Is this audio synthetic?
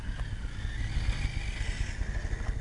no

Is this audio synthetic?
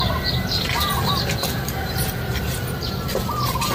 no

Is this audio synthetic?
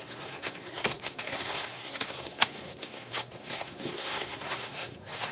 yes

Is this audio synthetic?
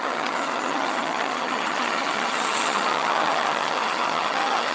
yes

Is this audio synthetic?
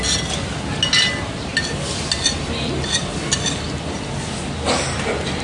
no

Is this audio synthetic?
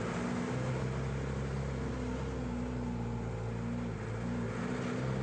no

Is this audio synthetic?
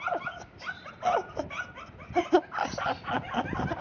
no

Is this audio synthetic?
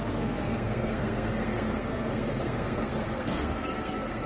yes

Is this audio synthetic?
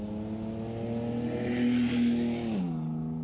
no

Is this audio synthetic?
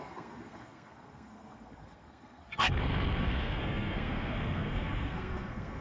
yes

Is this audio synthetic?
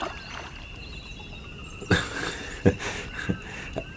no